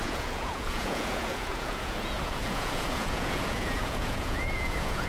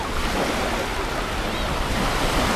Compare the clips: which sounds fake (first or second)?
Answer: first